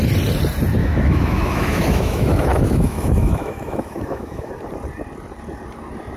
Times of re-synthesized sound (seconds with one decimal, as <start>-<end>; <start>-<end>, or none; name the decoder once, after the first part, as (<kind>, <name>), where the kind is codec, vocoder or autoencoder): 0.8-4.5 (autoencoder, DAC-VAE)